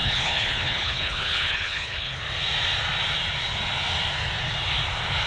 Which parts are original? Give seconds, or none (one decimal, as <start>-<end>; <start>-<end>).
2.2-5.3